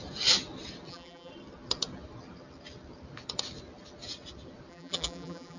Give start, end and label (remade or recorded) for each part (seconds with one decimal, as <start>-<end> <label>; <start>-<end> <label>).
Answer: 0.0-0.9 recorded; 0.9-1.3 remade; 1.3-4.7 recorded; 4.7-5.6 remade